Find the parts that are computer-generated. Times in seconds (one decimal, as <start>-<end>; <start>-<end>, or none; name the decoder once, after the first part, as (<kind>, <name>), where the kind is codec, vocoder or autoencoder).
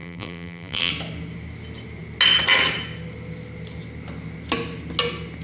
0.0-0.9 (vocoder, BigVGAN v2)